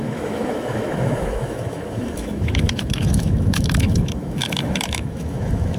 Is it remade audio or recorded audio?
remade